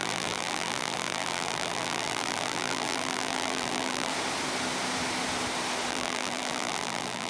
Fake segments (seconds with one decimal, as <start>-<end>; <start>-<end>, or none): 0.0-4.1; 5.9-7.3